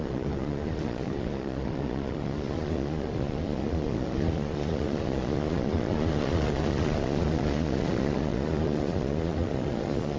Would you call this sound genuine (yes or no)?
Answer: no